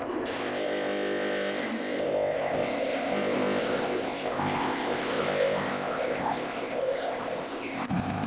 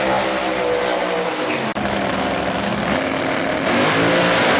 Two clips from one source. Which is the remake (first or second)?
first